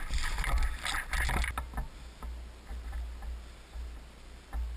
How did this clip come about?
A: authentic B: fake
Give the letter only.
A